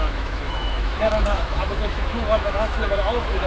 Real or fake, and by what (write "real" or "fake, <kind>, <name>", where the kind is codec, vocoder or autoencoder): fake, autoencoder, DAC-VAE